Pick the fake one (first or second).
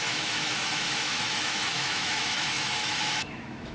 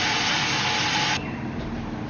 first